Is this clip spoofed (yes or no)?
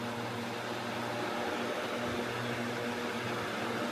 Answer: no